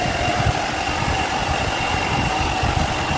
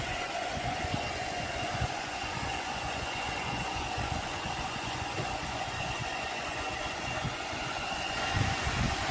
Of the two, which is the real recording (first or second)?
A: first